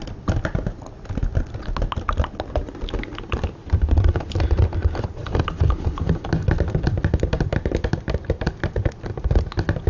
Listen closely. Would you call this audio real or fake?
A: real